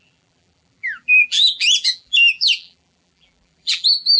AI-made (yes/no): yes